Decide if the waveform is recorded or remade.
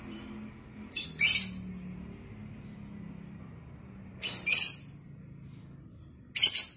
recorded